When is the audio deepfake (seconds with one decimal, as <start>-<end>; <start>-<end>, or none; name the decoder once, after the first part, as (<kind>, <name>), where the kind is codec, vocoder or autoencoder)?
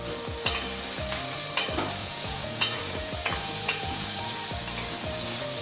2.0-4.3 (vocoder, Vocos)